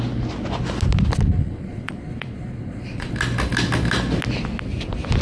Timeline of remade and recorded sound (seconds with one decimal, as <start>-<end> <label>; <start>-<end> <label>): 0.0-1.4 recorded; 1.4-3.1 remade; 3.1-5.2 recorded